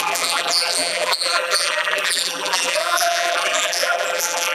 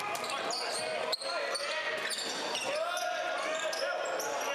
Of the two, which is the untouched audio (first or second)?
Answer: second